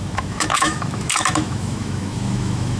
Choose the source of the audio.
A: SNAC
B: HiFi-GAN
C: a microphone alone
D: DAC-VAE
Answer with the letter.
D